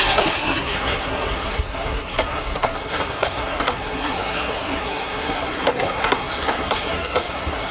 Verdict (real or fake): fake